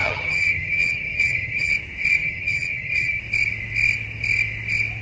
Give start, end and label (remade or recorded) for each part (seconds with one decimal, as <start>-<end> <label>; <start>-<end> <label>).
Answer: 0.0-1.7 remade; 1.7-2.2 recorded; 2.2-3.2 remade; 3.2-5.0 recorded